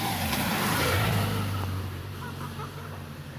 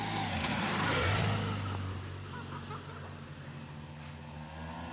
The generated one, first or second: first